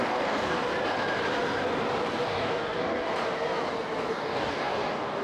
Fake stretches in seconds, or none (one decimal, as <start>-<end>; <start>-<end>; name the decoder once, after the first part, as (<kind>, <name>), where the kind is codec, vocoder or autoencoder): 0.0-0.7 (codec, DAC); 2.1-3.1; 4.1-5.2